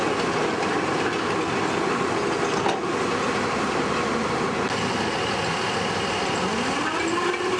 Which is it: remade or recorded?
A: recorded